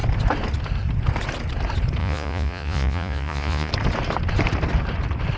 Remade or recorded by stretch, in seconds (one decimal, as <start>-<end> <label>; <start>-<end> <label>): 0.0-2.0 recorded; 2.0-3.7 remade; 3.7-5.4 recorded